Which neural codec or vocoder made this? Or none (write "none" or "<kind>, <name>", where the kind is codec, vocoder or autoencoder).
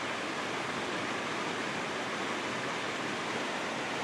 none